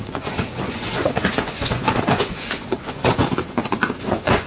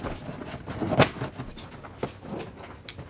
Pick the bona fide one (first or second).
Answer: second